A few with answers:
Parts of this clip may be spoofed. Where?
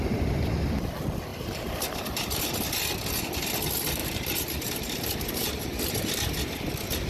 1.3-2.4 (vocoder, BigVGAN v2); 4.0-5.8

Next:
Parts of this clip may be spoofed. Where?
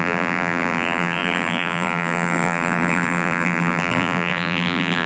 0.0-5.1 (vocoder, BigVGAN v2)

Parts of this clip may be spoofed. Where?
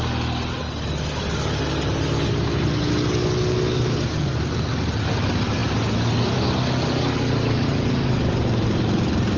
none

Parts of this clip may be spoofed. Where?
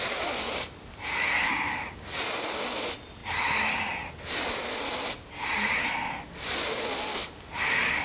none